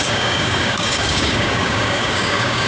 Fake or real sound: fake